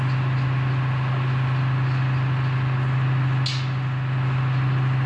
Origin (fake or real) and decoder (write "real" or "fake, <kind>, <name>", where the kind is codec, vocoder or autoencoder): real